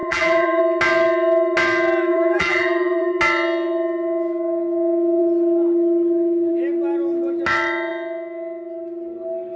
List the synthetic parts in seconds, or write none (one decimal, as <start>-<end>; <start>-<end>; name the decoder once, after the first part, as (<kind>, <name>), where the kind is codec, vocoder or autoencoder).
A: 0.0-0.6 (vocoder, BigVGAN v2); 2.1-3.1